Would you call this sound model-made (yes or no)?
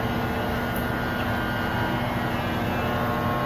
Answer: no